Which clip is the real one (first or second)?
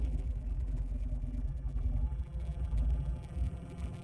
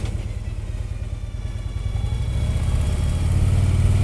second